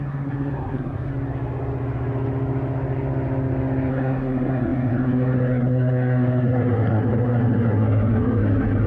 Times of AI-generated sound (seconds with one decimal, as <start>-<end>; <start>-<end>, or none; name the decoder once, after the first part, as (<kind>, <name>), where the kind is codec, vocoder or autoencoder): 0.0-1.1 (codec, SNAC); 3.9-8.9